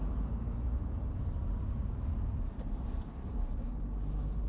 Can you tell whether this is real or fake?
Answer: real